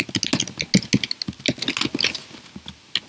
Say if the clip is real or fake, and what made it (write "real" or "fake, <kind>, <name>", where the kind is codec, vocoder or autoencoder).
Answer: real